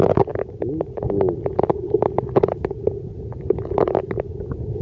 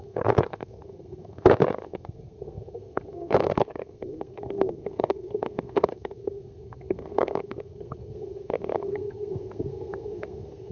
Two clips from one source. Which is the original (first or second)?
first